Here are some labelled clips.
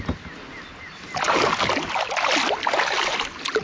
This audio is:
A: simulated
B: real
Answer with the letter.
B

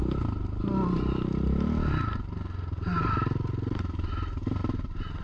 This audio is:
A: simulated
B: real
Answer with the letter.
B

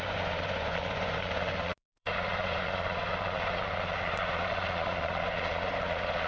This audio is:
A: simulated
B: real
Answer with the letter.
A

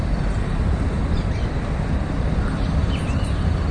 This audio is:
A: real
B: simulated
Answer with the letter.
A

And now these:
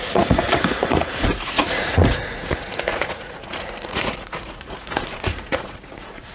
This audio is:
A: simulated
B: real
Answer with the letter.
A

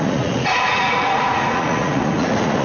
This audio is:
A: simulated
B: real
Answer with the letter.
A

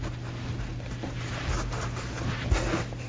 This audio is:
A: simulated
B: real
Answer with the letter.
B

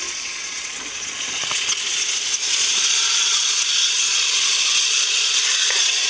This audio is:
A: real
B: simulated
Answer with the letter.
B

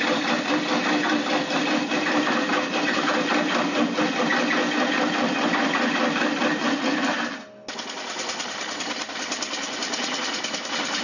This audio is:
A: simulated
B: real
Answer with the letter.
B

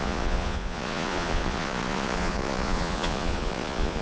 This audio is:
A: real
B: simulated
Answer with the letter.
B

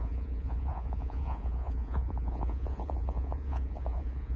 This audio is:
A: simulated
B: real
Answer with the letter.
A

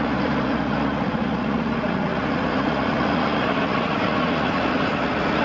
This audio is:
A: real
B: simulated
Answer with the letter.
B